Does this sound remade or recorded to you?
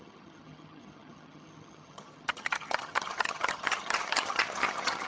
remade